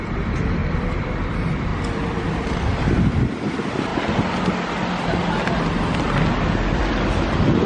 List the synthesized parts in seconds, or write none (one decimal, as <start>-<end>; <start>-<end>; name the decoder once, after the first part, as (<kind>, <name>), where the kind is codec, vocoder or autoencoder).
0.6-1.1 (vocoder, BigVGAN v2); 1.7-2.9